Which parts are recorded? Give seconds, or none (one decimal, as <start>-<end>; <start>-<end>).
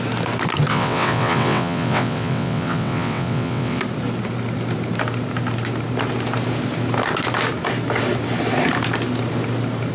0.0-0.7; 3.8-9.9